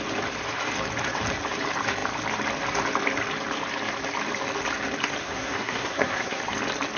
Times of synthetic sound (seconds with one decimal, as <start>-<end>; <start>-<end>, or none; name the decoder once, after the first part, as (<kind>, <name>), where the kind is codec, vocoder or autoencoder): 5.2-6.4 (codec, SNAC)